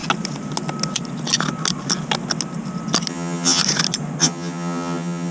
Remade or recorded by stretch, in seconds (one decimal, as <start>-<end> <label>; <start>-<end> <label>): 0.0-3.1 recorded; 3.1-3.6 remade; 3.6-4.2 recorded; 4.2-5.3 remade